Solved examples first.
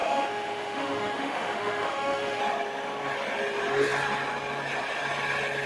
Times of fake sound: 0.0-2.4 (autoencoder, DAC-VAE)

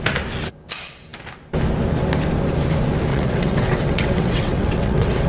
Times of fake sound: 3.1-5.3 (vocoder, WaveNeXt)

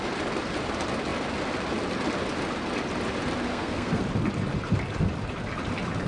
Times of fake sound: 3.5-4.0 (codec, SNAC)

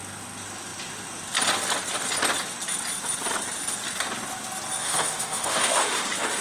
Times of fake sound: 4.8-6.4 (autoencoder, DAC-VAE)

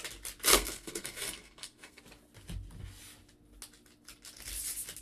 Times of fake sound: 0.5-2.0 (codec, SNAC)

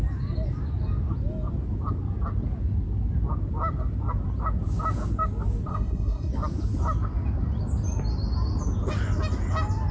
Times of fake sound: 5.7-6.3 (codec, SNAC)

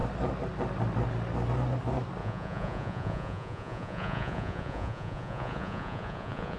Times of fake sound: 2.2-6.6 (vocoder, Vocos)